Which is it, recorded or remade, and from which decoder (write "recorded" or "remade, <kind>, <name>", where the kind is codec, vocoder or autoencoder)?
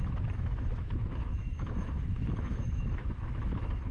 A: remade, autoencoder, DAC-VAE